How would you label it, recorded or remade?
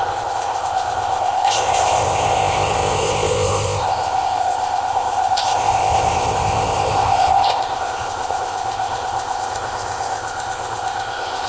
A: remade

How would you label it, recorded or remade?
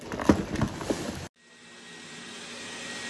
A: recorded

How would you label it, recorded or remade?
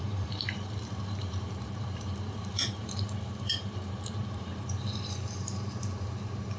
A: remade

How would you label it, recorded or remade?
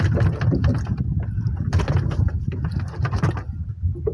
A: recorded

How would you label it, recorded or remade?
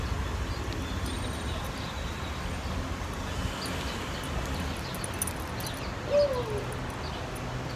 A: recorded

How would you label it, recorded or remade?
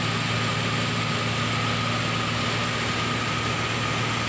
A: recorded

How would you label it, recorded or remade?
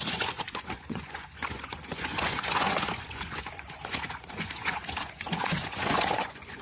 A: remade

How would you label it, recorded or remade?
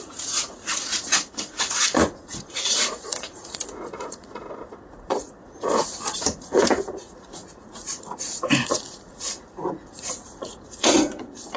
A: remade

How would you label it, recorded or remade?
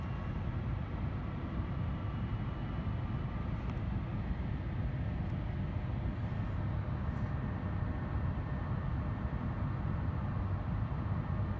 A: recorded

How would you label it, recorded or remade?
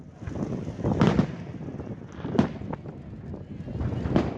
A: recorded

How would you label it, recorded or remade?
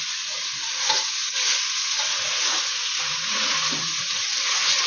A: remade